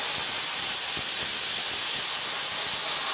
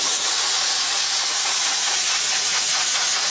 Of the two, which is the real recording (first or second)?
first